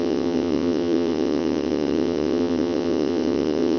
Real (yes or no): no